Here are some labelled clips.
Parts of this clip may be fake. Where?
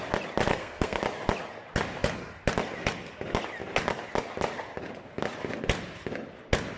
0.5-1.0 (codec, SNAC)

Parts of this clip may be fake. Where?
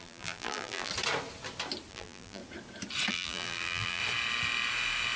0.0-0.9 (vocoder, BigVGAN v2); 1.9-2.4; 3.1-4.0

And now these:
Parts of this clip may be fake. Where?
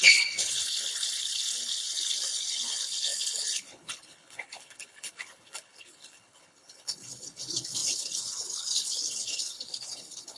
0.0-10.4 (codec, HILCodec)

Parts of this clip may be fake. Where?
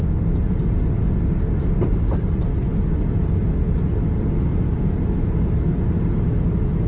none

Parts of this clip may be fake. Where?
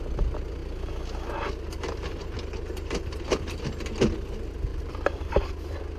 4.7-5.3 (vocoder, BigVGAN v2)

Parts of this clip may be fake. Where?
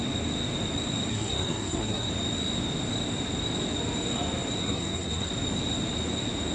1.1-2.1 (codec, SNAC); 4.6-5.3